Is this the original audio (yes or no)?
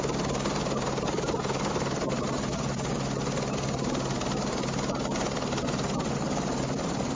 yes